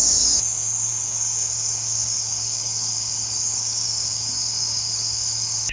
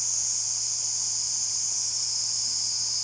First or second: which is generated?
first